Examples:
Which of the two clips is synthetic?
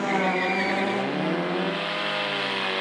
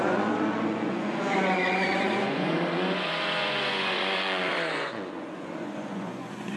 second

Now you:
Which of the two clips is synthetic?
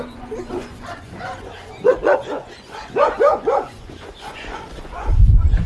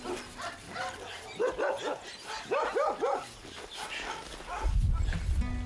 first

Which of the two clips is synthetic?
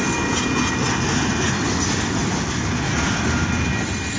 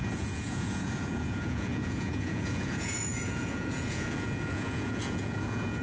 second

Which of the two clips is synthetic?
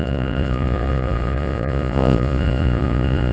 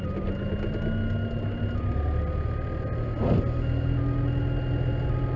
first